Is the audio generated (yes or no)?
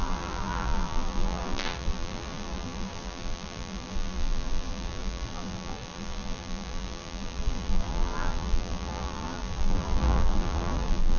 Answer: yes